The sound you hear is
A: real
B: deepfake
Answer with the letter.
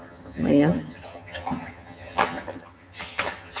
B